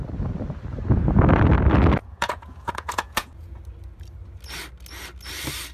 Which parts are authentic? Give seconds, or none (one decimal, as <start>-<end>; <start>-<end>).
0.0-2.0; 3.6-5.7